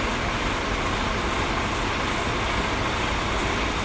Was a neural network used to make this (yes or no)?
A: no